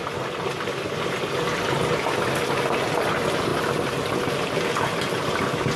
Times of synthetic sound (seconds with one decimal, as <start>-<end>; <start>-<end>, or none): none